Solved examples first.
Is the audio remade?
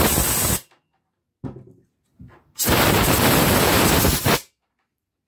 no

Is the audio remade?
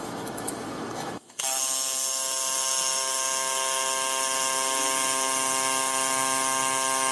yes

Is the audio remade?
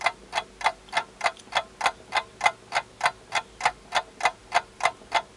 no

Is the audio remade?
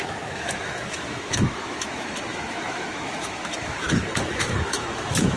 yes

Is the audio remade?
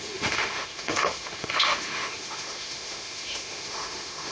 yes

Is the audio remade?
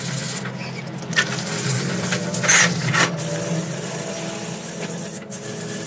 no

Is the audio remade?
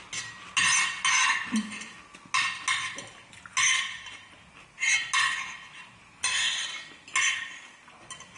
no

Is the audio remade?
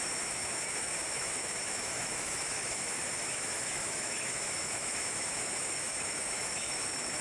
yes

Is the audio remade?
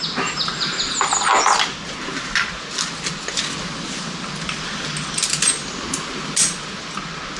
no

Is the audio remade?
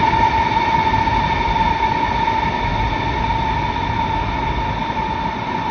no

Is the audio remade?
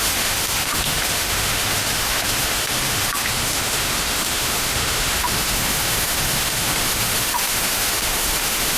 yes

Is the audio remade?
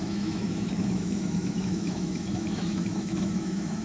yes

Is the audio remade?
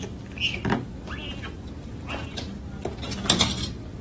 no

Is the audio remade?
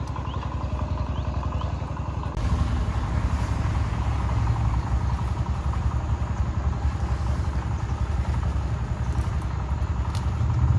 no